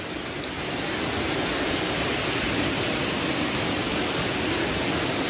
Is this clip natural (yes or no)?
yes